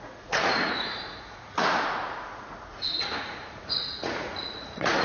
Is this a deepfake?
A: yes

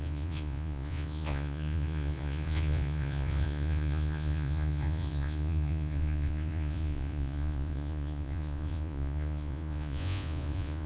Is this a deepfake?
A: yes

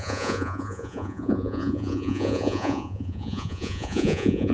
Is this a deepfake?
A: yes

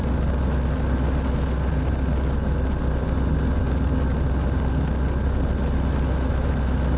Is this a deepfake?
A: no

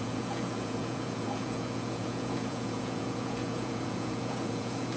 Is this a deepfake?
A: yes